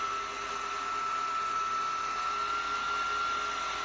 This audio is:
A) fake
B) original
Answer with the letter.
B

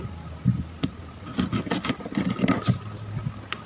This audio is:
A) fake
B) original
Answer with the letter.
B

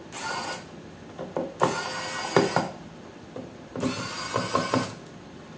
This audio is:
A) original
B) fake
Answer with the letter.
A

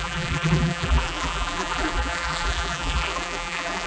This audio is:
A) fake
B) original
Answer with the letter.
A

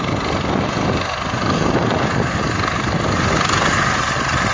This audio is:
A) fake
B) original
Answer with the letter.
B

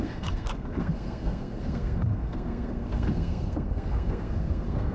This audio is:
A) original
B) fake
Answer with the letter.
B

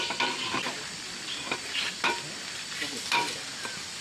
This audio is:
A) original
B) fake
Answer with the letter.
A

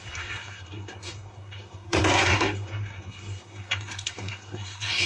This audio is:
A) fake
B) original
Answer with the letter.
A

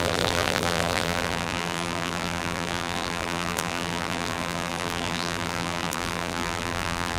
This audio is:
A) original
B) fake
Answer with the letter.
B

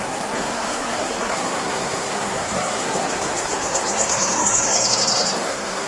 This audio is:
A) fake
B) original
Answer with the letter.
A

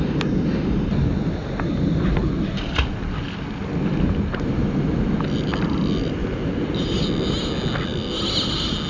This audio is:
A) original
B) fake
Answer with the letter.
A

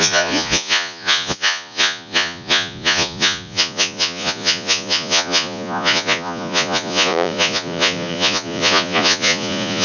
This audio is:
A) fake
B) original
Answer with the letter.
A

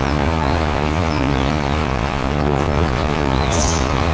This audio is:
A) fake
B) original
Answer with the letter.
A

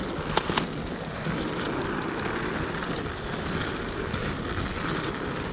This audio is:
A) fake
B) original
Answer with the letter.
B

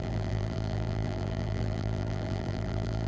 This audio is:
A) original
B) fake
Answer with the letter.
B